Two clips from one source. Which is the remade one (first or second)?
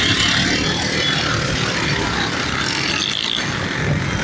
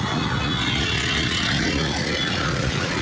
second